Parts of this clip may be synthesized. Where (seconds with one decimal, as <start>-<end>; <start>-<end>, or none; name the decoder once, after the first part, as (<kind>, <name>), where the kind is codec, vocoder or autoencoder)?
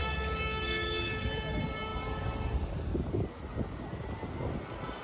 none